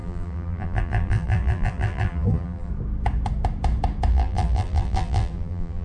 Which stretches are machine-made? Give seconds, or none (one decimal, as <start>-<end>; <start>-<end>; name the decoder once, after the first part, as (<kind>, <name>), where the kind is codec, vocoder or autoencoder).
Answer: 0.0-2.7 (vocoder, BigVGAN v2); 4.1-5.8